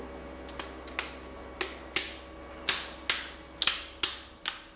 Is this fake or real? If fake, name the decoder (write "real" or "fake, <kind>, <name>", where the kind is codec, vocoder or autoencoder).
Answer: real